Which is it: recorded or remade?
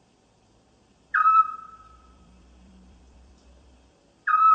remade